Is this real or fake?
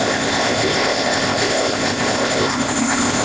fake